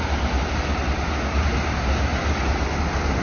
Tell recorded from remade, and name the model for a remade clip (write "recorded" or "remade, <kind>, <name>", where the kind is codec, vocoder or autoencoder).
recorded